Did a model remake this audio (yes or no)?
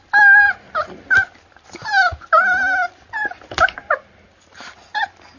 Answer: no